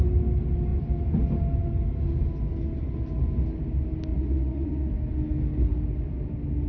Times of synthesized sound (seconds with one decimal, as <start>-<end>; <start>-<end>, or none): 4.1-4.9